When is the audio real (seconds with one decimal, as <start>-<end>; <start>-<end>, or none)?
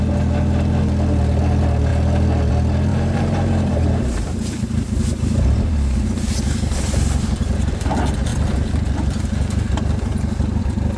0.0-2.9; 5.7-11.0